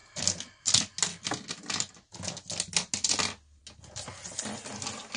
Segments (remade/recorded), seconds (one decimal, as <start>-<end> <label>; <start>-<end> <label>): 0.0-5.2 recorded